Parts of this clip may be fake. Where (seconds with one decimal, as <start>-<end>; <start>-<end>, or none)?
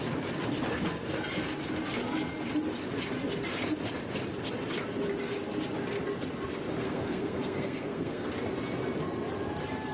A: 6.8-8.3